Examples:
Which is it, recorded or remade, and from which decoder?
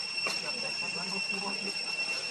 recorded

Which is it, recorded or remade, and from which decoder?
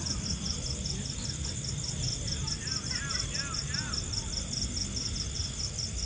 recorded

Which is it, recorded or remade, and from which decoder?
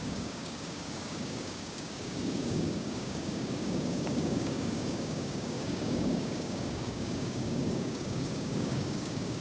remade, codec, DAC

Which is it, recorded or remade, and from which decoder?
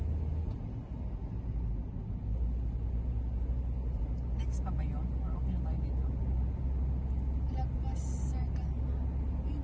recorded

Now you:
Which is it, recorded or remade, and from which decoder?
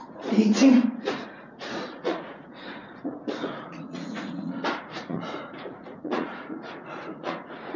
remade, vocoder, Vocos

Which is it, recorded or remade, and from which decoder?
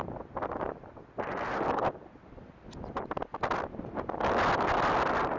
recorded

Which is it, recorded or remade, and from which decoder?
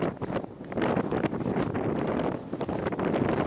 recorded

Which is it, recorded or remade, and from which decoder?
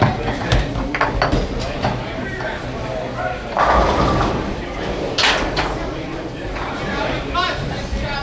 recorded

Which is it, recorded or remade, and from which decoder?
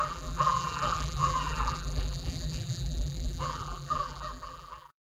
remade, vocoder, BigVGAN v2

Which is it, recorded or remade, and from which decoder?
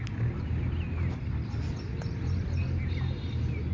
recorded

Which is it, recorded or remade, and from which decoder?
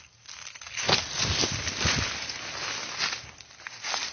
recorded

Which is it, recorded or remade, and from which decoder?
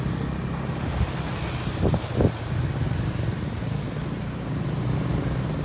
recorded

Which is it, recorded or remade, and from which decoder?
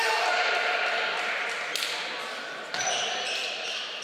recorded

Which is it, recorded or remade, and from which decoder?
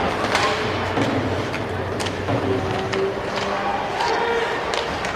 recorded